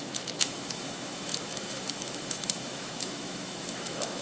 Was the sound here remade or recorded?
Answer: remade